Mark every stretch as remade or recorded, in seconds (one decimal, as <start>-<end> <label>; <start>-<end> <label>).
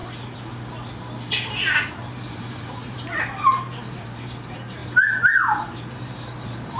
0.0-1.9 recorded; 1.9-6.8 remade